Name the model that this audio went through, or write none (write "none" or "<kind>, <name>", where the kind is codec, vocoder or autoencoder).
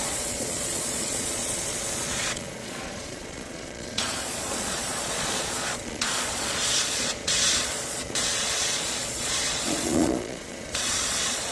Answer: vocoder, Vocos